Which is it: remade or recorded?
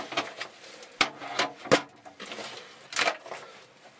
recorded